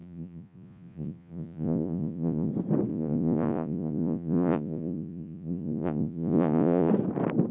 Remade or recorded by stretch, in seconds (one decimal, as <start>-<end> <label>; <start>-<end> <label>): 0.0-2.5 remade; 2.5-2.9 recorded; 2.9-6.9 remade; 6.9-7.5 recorded